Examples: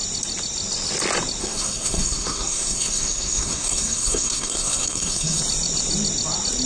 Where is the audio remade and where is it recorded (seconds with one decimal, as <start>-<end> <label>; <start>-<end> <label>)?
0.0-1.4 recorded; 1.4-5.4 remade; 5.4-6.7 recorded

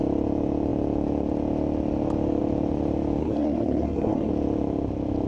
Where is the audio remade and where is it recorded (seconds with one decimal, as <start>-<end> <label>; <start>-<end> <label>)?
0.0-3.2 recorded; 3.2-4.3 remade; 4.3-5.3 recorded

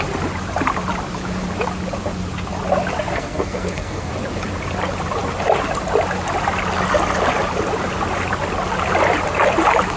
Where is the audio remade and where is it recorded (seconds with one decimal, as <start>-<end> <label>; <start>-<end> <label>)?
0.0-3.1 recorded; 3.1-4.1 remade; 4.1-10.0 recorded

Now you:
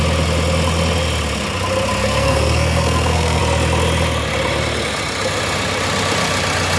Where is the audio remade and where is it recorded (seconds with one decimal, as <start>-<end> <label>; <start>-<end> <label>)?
0.0-2.0 recorded; 2.0-3.4 remade; 3.4-6.8 recorded

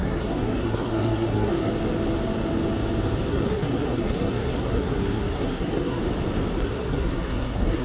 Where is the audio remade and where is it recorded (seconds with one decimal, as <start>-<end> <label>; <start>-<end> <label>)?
0.0-1.7 remade; 1.7-3.3 recorded; 3.3-6.0 remade; 6.0-6.6 recorded; 6.6-7.8 remade